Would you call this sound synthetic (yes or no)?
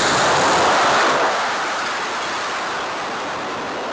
no